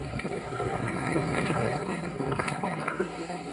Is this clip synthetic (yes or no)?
yes